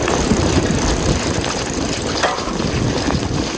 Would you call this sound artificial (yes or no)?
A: no